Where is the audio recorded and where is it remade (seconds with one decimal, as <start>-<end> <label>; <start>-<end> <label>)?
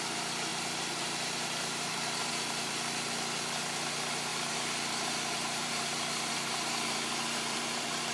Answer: 0.0-0.5 recorded; 0.5-2.3 remade; 2.3-4.3 recorded; 4.3-8.1 remade